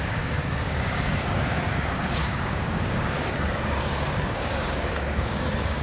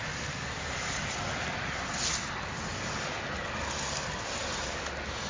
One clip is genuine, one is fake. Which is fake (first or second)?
first